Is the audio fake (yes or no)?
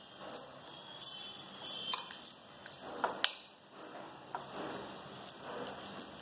no